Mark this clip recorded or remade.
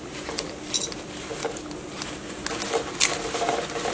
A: recorded